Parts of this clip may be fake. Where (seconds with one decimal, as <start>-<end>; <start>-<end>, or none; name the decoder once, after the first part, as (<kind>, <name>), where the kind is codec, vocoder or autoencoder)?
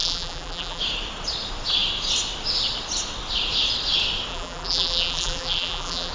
0.0-0.8 (vocoder, BigVGAN v2); 4.3-6.1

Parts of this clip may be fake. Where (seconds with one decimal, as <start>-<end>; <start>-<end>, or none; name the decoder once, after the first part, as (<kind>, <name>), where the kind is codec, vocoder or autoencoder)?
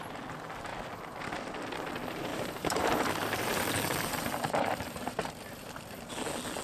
2.3-6.1 (vocoder, BigVGAN v2)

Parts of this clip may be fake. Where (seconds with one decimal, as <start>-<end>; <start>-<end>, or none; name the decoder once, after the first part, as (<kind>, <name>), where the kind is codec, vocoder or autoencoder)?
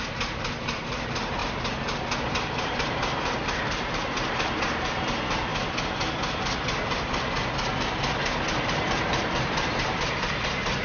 0.0-1.4 (vocoder, BigVGAN v2); 2.6-5.5; 8.6-10.8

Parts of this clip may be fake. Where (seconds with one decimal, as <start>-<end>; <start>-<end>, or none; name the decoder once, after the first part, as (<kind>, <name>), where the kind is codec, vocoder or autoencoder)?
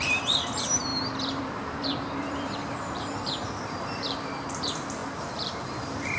0.0-6.2 (vocoder, BigVGAN v2)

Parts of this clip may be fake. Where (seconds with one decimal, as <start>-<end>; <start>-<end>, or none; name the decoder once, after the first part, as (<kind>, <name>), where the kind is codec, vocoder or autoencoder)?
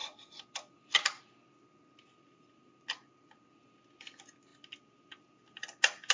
none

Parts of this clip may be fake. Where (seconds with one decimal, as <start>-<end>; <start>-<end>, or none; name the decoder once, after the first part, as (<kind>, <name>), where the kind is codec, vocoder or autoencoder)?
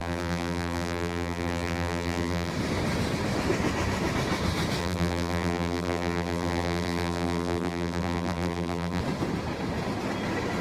0.0-2.5 (vocoder, BigVGAN v2); 4.8-9.0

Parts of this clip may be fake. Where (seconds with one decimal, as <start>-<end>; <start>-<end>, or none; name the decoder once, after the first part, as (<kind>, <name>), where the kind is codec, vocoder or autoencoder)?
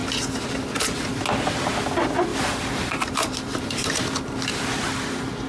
2.3-4.0 (vocoder, BigVGAN v2)